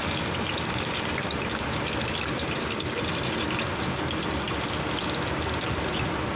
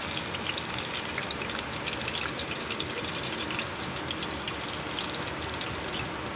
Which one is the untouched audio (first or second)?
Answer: second